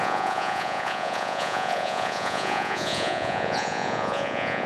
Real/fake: fake